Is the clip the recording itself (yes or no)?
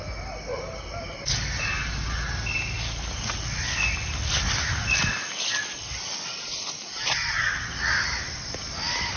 yes